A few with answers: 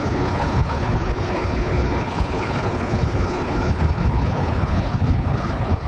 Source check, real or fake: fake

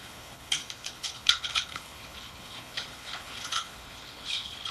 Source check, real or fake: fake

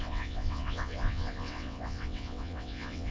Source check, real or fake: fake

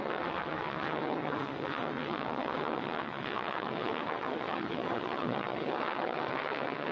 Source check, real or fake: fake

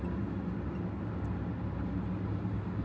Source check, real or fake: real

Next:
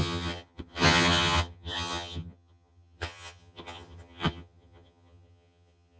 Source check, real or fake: fake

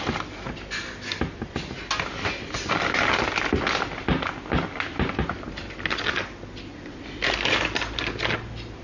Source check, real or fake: real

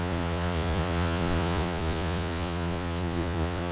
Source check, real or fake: fake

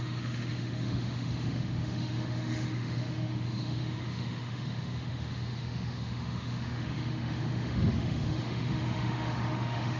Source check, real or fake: fake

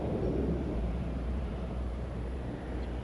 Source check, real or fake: fake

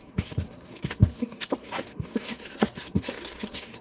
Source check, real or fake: fake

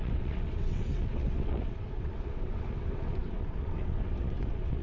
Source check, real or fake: fake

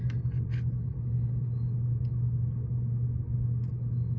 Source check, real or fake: real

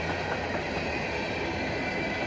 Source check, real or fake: real